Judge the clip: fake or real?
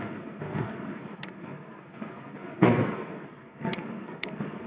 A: fake